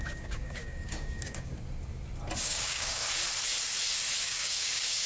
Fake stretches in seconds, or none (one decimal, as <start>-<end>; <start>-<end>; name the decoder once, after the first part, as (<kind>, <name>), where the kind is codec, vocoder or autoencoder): 0.0-1.5 (codec, DAC); 2.4-3.0; 4.2-5.1